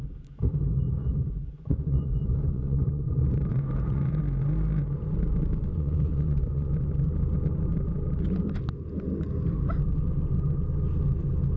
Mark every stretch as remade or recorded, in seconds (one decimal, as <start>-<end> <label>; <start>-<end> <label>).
0.0-1.0 recorded; 1.0-4.2 remade; 4.2-5.6 recorded; 5.6-6.7 remade; 6.7-11.6 recorded